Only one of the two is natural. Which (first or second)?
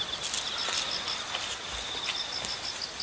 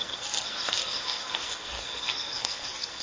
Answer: first